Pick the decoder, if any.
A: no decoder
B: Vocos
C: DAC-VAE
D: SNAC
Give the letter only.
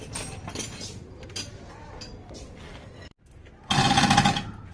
A